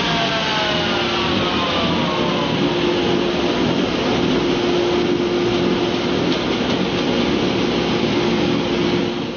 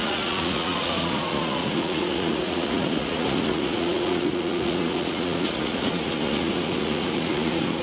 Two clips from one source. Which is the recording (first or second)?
first